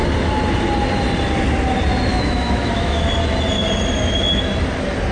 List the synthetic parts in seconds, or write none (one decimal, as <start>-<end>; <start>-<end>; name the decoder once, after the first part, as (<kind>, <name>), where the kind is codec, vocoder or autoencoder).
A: 2.1-3.0 (autoencoder, DAC-VAE)